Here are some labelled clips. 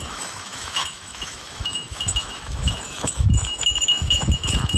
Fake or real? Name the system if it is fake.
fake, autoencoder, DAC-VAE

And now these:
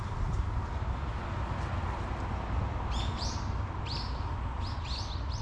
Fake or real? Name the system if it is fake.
real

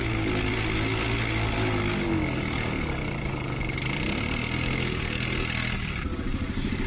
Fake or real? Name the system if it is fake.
real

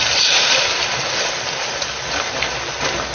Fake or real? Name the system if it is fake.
real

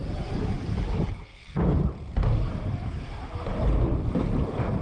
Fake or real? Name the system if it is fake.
real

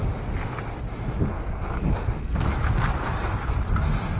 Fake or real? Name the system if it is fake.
real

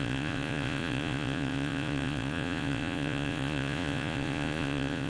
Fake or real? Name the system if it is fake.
fake, vocoder, Vocos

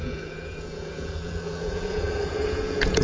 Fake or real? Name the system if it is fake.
fake, vocoder, Vocos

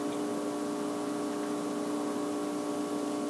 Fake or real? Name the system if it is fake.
real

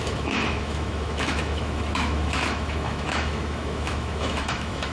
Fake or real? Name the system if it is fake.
fake, autoencoder, DAC-VAE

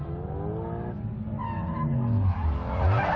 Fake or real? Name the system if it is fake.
real